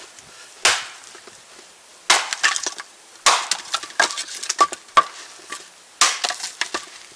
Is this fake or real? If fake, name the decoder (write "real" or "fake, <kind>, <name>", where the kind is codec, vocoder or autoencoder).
real